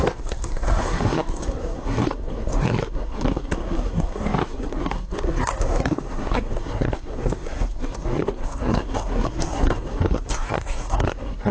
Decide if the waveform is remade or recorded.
remade